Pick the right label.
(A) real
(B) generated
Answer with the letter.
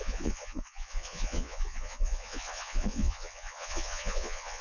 B